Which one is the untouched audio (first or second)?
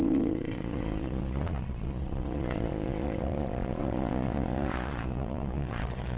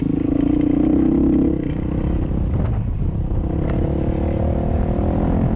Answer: second